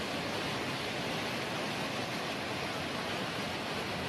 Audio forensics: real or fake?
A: real